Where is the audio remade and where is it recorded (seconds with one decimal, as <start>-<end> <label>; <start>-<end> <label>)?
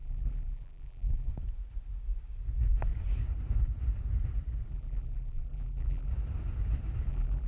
0.0-1.3 remade; 1.3-4.7 recorded; 4.7-6.1 remade; 6.1-7.1 recorded; 7.1-7.5 remade